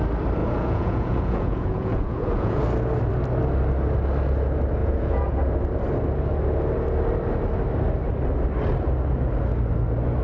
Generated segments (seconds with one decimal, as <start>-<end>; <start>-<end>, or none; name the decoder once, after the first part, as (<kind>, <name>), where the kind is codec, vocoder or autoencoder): 0.4-2.6 (vocoder, Vocos); 4.8-5.4